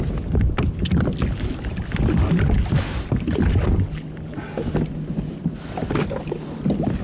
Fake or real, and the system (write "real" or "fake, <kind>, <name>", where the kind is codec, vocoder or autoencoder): real